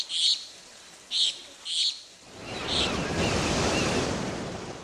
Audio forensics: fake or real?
real